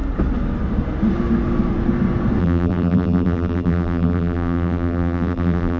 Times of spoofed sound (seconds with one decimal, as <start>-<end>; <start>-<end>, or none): 2.4-5.8